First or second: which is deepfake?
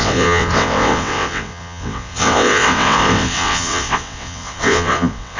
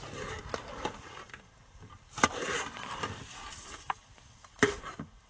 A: first